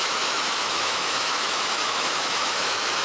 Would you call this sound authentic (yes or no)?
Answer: no